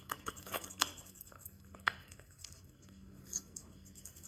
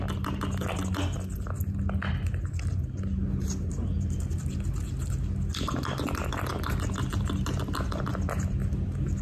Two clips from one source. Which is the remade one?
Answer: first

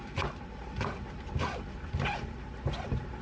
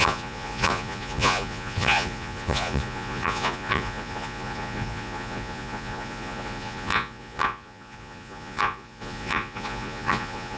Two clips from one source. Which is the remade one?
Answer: second